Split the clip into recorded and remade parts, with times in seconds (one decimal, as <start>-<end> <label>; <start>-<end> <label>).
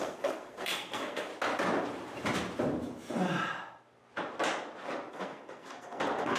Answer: 0.0-1.3 remade; 1.3-5.1 recorded; 5.1-6.4 remade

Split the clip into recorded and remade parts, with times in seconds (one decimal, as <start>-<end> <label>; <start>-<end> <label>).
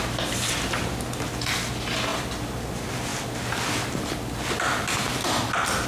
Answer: 0.0-5.9 recorded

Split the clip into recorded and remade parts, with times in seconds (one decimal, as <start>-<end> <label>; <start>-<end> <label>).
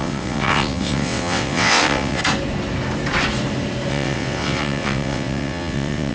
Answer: 0.0-2.2 remade; 2.2-3.9 recorded; 3.9-6.1 remade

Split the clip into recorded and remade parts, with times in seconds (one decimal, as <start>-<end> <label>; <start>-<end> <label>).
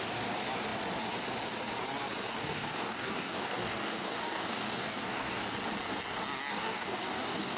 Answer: 0.0-2.4 recorded; 2.4-5.4 remade; 5.4-6.5 recorded; 6.5-7.6 remade